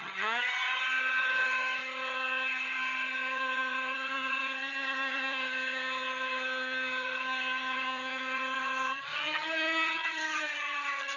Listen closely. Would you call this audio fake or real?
fake